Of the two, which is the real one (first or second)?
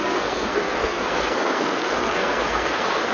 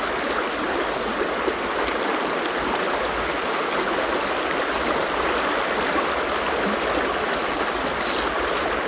second